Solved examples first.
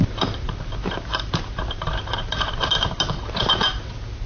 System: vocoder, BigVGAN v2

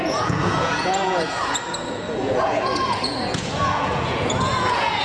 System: vocoder, Vocos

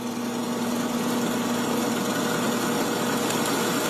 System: none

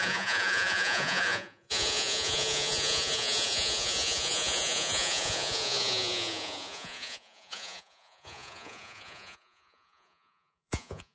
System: vocoder, Vocos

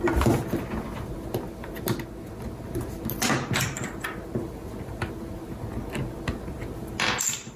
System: none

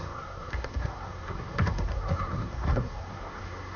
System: codec, SNAC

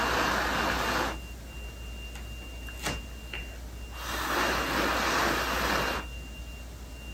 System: none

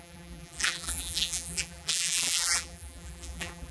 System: vocoder, BigVGAN v2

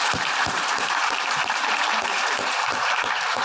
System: vocoder, BigVGAN v2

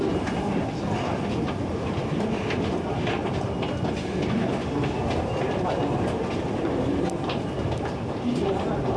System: none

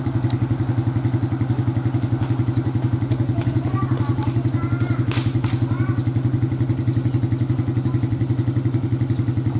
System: none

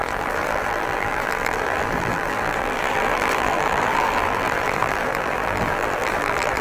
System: vocoder, BigVGAN v2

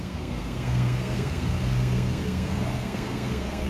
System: codec, SNAC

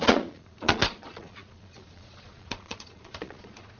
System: vocoder, Vocos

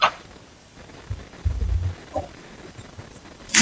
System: vocoder, BigVGAN v2